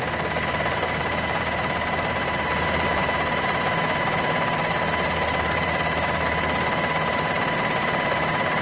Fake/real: fake